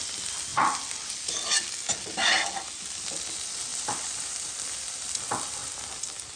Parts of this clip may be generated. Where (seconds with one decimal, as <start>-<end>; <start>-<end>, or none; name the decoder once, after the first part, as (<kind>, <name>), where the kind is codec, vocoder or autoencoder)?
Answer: 3.7-4.5 (vocoder, BigVGAN v2)